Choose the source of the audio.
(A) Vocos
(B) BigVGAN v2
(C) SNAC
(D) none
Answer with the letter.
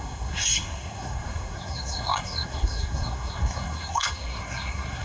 C